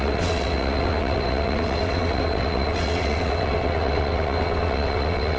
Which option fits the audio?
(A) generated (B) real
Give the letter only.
A